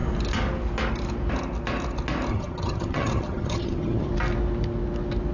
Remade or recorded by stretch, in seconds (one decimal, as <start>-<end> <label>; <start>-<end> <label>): 0.0-2.3 recorded; 2.3-4.1 remade; 4.1-5.3 recorded